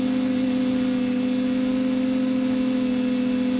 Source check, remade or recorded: recorded